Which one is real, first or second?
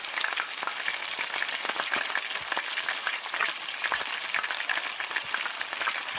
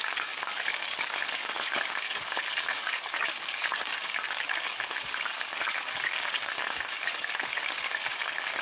first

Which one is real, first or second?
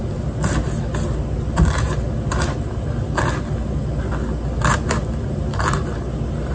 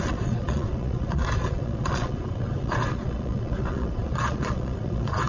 first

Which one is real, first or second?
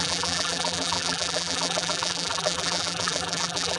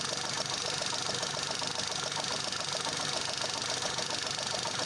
second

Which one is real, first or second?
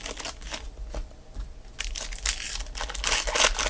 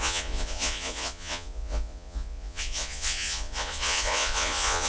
first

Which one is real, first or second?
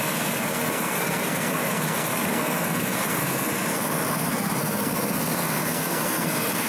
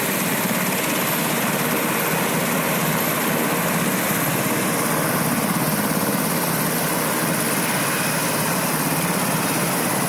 second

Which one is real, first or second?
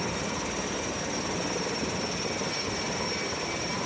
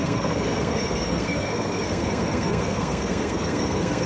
first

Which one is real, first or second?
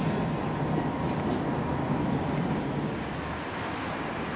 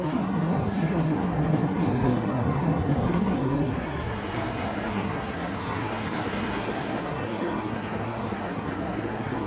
first